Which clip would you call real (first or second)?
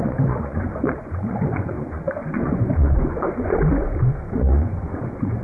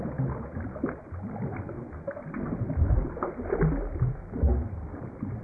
second